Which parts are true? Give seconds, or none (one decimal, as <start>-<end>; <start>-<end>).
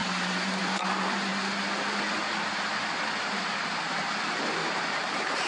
1.3-4.6